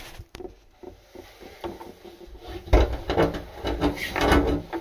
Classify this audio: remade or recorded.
recorded